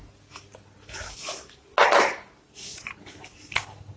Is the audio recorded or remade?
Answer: recorded